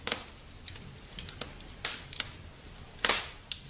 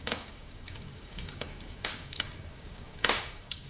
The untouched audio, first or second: first